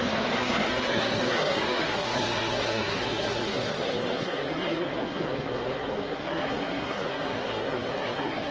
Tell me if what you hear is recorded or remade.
remade